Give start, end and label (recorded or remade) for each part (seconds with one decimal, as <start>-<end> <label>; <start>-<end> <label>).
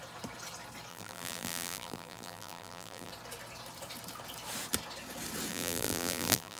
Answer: 0.0-0.9 recorded; 0.9-3.1 remade; 3.1-5.5 recorded; 5.5-6.6 remade